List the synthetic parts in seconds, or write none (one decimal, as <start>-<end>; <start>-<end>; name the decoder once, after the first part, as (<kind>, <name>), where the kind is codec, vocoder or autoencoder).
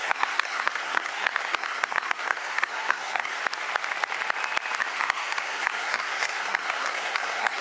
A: 0.0-3.4 (codec, SNAC); 4.8-7.6